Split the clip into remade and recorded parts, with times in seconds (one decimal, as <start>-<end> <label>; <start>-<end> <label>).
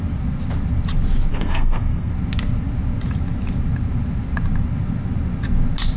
0.0-1.3 recorded; 1.3-2.1 remade; 2.1-6.0 recorded